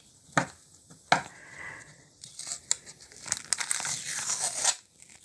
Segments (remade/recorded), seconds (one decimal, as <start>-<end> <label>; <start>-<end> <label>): 0.0-1.3 recorded; 1.3-2.3 remade; 2.3-5.2 recorded